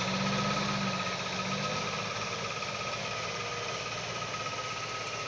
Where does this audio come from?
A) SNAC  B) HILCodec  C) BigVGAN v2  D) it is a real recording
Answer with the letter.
D